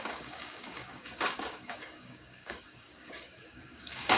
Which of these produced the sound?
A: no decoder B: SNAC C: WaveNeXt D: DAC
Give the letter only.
D